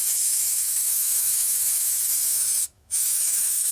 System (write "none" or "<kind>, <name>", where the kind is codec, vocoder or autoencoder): autoencoder, DAC-VAE